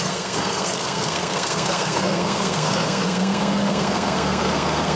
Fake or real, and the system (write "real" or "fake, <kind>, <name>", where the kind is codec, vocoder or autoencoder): fake, codec, SNAC